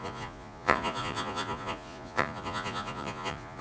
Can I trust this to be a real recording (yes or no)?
no